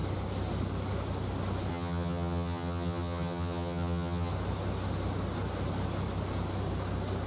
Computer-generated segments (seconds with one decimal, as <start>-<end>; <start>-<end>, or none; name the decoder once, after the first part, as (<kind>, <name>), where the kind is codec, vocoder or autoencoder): 1.7-4.3 (vocoder, HiFi-GAN)